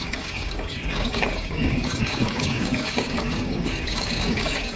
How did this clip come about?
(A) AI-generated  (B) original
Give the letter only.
A